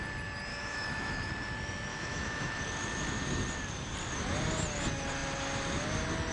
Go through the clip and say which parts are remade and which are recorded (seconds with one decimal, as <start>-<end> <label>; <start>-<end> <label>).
0.0-0.5 recorded; 0.5-1.3 remade; 1.3-1.9 recorded; 1.9-2.6 remade; 2.6-6.3 recorded